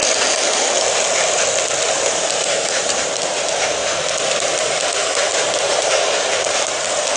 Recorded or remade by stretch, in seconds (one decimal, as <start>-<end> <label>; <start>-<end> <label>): 0.0-1.9 recorded; 1.9-3.8 remade; 3.8-5.3 recorded; 5.3-7.2 remade

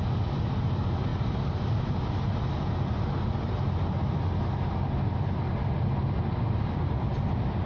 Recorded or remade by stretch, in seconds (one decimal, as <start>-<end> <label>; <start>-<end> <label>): 0.0-7.7 recorded

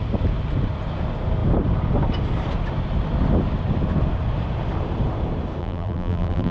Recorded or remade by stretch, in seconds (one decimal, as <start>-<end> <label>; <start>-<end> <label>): 0.0-5.6 recorded; 5.6-6.5 remade

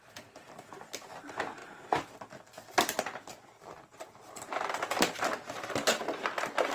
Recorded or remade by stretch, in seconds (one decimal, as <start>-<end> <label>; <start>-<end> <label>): 0.0-6.7 recorded

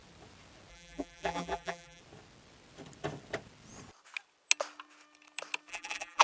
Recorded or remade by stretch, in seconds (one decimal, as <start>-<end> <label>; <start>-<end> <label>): 0.0-0.7 recorded; 0.7-2.0 remade; 2.0-5.7 recorded; 5.7-6.2 remade

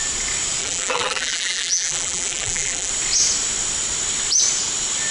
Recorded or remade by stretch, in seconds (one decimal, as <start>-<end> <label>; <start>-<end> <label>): 0.0-0.6 recorded; 0.6-2.9 remade; 2.9-5.1 recorded

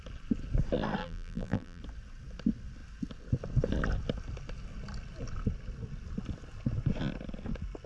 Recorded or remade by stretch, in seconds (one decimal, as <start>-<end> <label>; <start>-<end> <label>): 0.0-1.0 recorded; 1.0-1.8 remade; 1.8-7.9 recorded